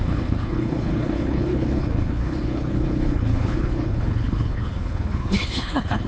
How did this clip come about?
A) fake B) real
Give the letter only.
A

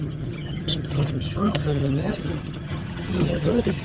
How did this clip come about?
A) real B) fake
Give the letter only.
B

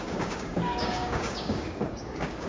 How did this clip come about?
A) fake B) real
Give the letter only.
A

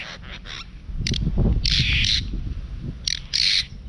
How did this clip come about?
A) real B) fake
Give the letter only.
A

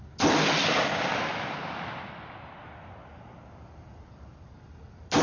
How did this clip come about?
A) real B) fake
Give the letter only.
A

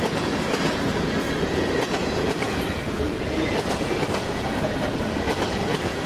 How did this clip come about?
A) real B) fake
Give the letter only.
B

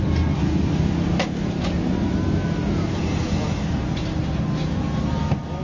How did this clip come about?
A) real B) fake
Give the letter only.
A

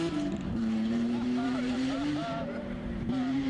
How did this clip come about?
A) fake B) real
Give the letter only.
A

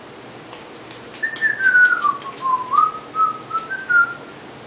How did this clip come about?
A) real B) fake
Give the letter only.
A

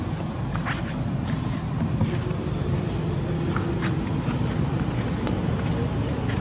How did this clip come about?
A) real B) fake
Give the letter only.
A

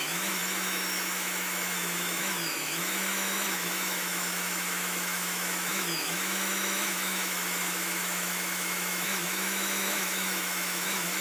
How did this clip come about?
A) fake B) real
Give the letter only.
A